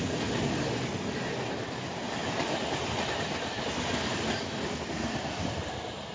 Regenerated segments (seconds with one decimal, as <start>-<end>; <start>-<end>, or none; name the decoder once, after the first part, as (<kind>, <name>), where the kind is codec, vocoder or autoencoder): none